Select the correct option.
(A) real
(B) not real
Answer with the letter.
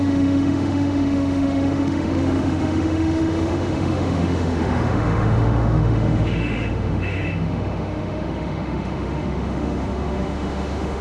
B